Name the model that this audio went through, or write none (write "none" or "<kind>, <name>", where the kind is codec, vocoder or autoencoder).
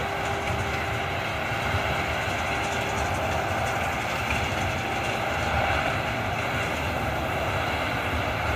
none